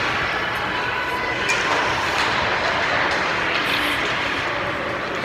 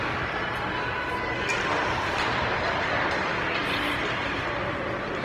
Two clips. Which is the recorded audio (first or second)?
second